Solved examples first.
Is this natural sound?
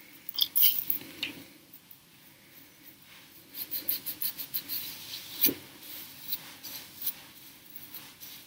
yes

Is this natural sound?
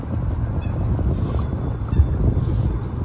yes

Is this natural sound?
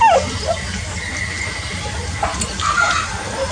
yes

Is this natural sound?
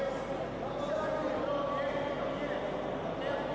yes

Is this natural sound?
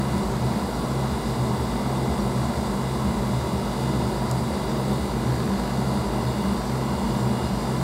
yes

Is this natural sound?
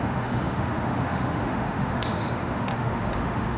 no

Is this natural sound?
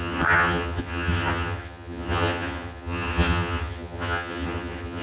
no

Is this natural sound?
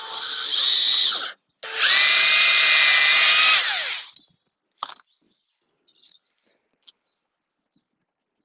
yes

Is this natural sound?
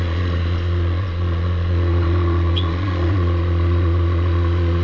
no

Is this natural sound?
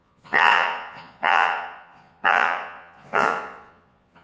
no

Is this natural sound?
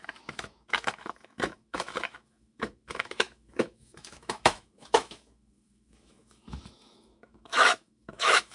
no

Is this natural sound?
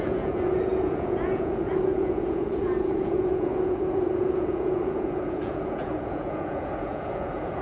no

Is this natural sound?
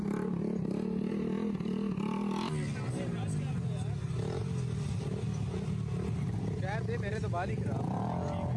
yes